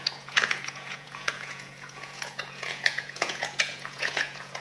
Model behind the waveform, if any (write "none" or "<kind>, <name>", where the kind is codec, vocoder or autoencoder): vocoder, Vocos